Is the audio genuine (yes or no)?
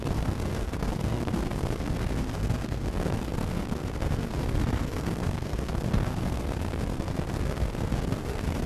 no